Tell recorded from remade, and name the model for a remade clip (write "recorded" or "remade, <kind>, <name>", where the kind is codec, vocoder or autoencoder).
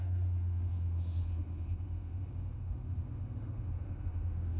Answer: remade, autoencoder, DAC-VAE